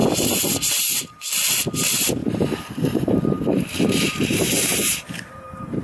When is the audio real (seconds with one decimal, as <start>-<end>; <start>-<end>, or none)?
0.0-2.2